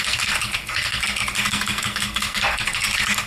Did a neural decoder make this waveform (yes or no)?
yes